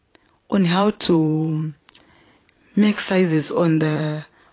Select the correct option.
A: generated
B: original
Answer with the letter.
A